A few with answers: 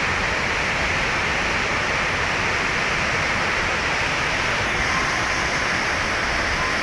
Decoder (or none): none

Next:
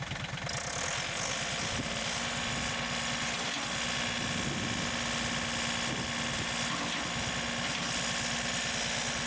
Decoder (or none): none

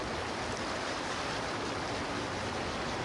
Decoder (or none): none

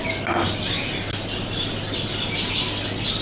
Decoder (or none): none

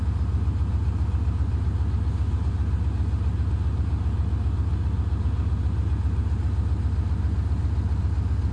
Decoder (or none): none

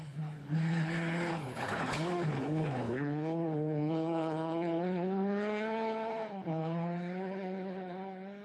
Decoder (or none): codec, HILCodec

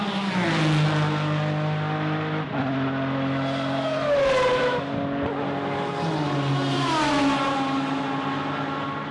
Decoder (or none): none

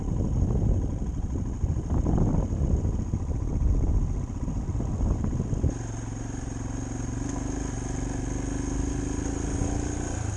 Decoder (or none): none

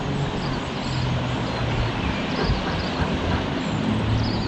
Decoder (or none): none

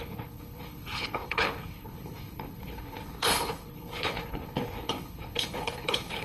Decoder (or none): codec, HILCodec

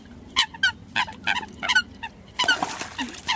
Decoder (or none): none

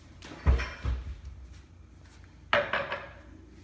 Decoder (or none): none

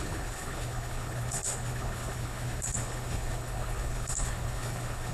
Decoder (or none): codec, HILCodec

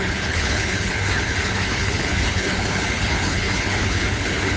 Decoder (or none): codec, HILCodec